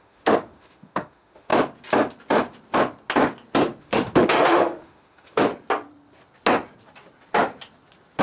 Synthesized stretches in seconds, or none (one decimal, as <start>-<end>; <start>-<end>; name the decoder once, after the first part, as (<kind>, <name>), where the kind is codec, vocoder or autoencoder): 0.0-1.5 (autoencoder, DAC-VAE); 3.8-5.5